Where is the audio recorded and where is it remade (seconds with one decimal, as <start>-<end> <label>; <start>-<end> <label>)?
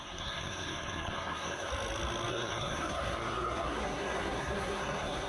0.0-1.7 remade; 1.7-2.3 recorded; 2.3-5.3 remade